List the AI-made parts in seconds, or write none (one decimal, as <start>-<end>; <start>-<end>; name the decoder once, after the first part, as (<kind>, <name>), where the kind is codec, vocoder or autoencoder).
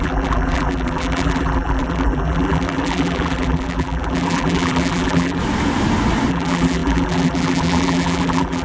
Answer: 0.0-5.4 (vocoder, BigVGAN v2); 6.3-8.6